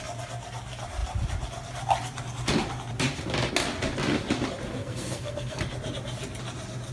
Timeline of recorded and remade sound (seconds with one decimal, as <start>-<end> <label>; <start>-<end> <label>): 0.0-4.8 recorded; 4.8-5.6 remade; 5.6-6.9 recorded